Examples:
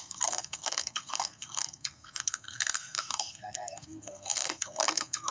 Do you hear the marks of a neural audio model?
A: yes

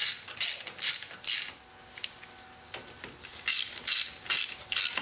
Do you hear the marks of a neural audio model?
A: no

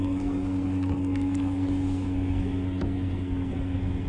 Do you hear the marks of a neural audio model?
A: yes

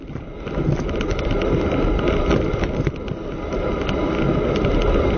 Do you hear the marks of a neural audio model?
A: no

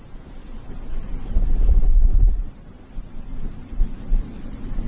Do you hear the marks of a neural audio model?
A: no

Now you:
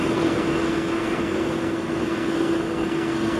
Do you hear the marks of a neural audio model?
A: yes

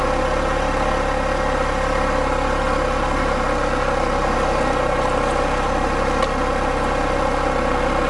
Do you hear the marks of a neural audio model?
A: no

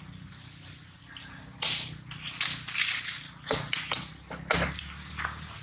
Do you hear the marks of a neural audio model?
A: no